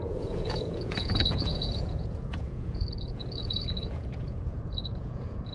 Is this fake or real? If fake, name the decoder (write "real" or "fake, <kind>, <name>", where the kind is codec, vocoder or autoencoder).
fake, vocoder, Vocos